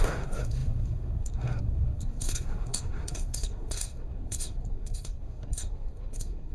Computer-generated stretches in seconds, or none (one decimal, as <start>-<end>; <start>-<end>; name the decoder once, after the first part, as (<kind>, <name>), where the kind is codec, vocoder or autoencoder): 0.0-6.5 (codec, SNAC)